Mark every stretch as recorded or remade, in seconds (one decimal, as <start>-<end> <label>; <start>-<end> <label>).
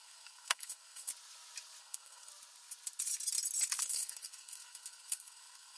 0.0-1.1 remade; 1.1-1.8 recorded; 1.8-2.3 remade; 2.3-3.8 recorded; 3.8-5.8 remade